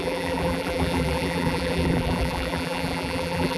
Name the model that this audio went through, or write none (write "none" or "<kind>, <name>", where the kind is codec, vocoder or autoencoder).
vocoder, BigVGAN v2